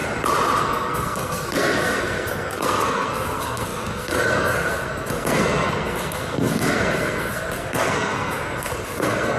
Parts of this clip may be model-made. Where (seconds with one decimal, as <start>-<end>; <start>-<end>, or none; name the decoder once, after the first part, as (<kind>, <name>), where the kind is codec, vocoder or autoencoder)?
0.6-9.4 (codec, SNAC)